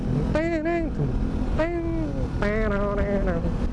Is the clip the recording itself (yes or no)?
yes